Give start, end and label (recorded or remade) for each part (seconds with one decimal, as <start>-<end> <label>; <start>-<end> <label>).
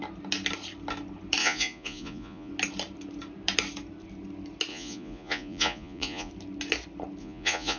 0.0-1.4 recorded; 1.4-2.5 remade; 2.5-4.7 recorded; 4.7-6.3 remade; 6.3-7.2 recorded; 7.2-7.8 remade